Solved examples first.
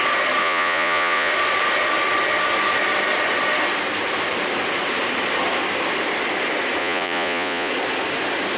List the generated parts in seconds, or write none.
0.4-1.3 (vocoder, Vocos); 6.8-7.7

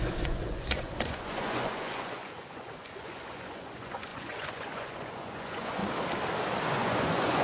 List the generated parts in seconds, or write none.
0.0-5.8 (vocoder, Vocos); 6.6-7.4

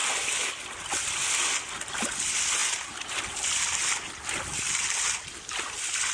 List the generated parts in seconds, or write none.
none

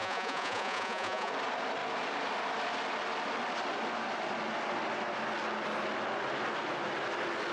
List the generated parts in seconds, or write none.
0.0-1.3 (vocoder, Vocos)

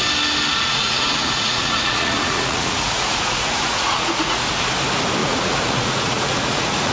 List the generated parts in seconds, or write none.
0.5-4.4 (vocoder, Vocos); 5.2-6.9